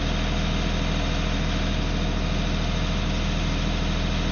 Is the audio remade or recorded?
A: recorded